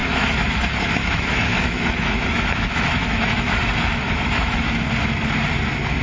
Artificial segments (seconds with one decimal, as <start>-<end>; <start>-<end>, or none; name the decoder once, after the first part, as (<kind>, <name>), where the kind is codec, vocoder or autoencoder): 0.0-3.6 (autoencoder, DAC-VAE); 4.0-4.7